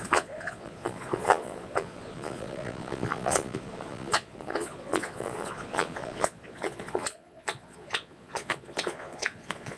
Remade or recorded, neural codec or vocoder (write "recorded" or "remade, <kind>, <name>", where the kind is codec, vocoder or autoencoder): remade, vocoder, Vocos